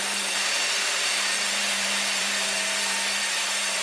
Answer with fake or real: fake